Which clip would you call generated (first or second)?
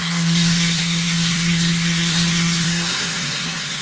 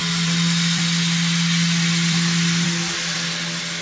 first